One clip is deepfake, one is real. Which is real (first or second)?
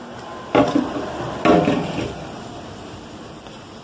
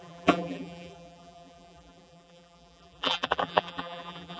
first